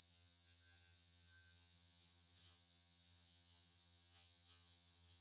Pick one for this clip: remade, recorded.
remade